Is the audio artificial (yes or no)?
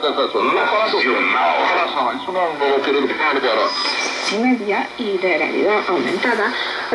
no